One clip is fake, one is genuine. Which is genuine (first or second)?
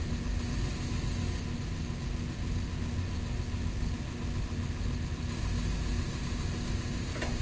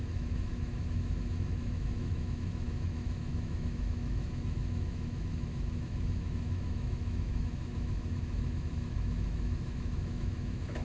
first